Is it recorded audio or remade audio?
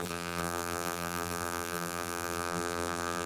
remade